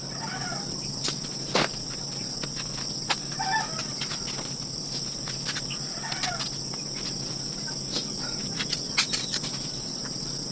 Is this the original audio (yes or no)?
yes